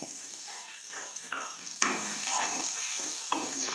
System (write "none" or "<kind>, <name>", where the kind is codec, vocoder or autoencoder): codec, DAC